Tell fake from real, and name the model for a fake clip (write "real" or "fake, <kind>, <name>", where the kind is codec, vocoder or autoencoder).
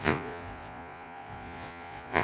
fake, vocoder, Vocos